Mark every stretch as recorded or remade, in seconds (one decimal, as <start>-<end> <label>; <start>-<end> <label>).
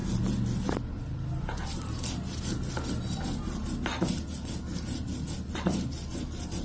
0.0-6.6 recorded